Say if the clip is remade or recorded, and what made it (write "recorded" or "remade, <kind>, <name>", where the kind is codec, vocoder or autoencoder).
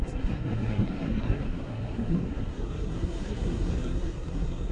remade, codec, SNAC